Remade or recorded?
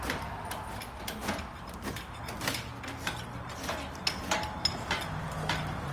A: recorded